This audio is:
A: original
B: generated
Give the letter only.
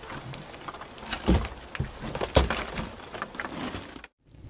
B